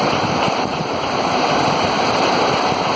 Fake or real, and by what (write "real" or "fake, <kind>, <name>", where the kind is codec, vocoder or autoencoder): fake, vocoder, BigVGAN v2